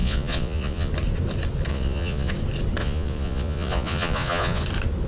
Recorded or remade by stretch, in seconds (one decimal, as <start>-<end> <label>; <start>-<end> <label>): 0.0-0.9 remade; 0.9-1.7 recorded; 1.7-2.3 remade; 2.3-2.8 recorded; 2.8-4.6 remade; 4.6-5.1 recorded